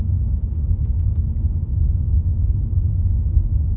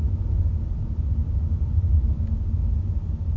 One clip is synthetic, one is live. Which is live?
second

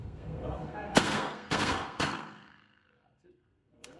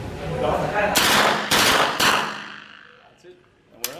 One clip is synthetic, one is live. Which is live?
second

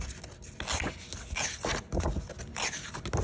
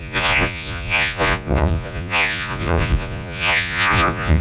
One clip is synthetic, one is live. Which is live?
first